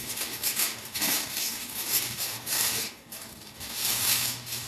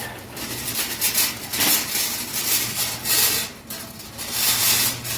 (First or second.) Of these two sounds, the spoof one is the first